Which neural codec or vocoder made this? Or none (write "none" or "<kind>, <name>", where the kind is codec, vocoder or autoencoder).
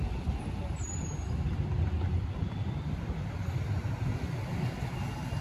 none